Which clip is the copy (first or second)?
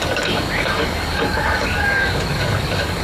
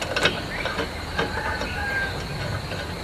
first